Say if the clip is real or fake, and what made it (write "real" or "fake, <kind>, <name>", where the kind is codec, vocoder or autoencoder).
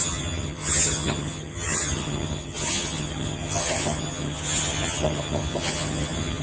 fake, vocoder, HiFi-GAN